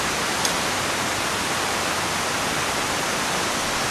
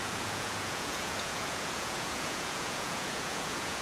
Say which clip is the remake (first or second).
second